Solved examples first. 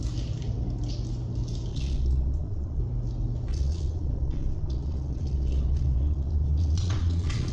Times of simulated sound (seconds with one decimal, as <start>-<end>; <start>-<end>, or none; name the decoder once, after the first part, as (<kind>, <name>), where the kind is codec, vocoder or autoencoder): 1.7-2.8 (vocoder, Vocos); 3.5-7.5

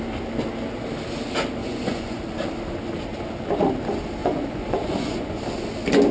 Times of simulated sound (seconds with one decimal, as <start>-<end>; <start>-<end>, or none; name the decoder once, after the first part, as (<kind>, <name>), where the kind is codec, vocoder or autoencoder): 1.6-2.2 (vocoder, Vocos); 4.2-5.4

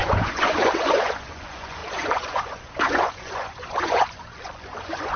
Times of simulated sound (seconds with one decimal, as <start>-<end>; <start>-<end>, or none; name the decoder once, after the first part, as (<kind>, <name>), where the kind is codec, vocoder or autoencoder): 0.0-5.2 (vocoder, Vocos)